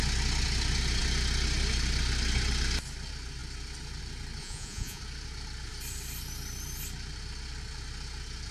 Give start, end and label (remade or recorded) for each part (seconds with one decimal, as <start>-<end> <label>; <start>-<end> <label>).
0.0-4.4 recorded; 4.4-5.0 remade; 5.0-8.5 recorded